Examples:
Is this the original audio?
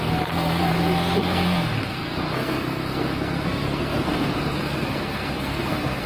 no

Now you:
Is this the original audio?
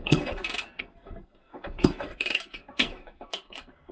no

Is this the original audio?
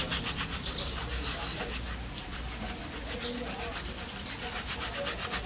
yes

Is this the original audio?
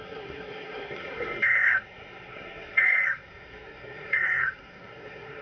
no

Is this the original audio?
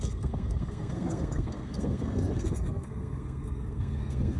no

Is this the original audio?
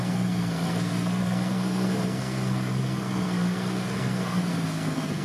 no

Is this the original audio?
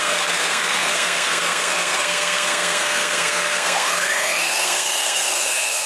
no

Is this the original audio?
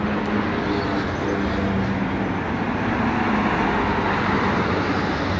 yes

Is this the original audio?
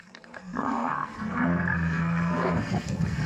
no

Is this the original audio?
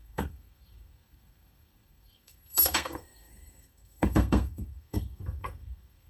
no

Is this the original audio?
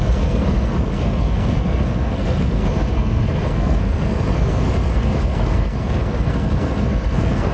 no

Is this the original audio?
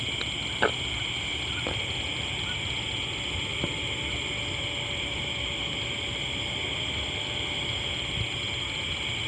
yes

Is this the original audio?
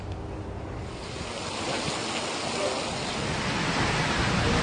yes